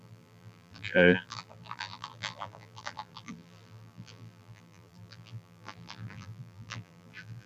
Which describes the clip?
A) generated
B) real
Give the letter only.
A